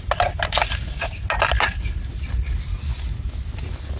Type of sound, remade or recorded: recorded